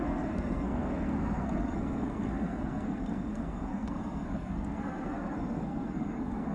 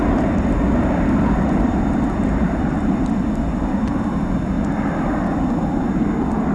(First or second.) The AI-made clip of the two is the first